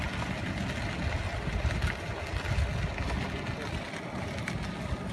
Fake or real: real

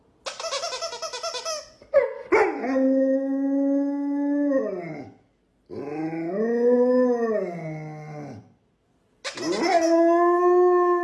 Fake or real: real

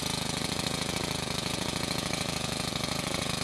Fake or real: fake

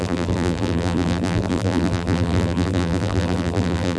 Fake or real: fake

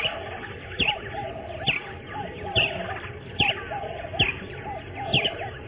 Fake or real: fake